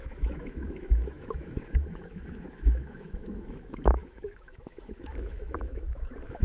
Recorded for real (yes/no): no